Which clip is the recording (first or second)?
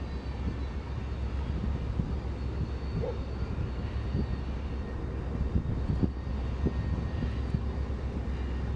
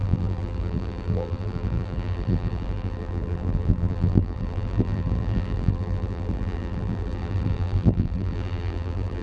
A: first